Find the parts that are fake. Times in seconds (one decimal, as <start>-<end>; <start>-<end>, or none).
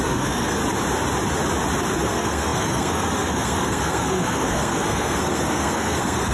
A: 0.0-0.6; 2.0-6.3